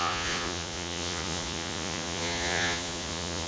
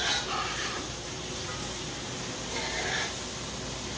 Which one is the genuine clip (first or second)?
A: second